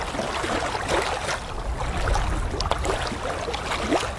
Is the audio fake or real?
real